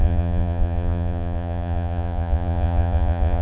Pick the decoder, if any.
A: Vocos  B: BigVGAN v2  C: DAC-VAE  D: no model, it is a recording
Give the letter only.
A